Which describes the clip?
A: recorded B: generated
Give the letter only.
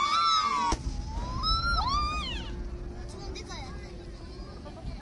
A